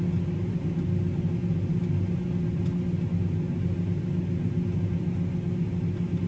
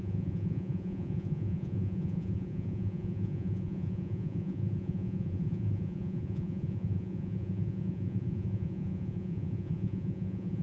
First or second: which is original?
first